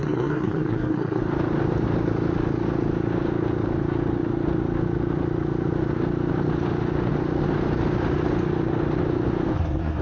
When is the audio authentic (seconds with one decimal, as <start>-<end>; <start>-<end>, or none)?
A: 1.2-9.5